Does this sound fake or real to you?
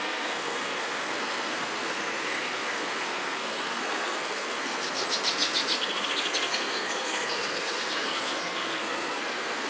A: fake